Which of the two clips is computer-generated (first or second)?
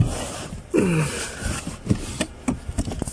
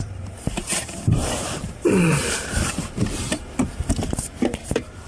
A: second